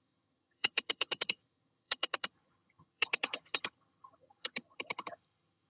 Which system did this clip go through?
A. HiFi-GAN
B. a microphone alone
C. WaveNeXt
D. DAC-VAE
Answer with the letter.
A